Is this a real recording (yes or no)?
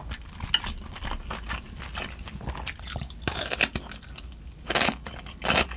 yes